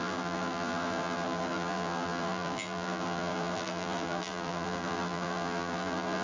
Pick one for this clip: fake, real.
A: fake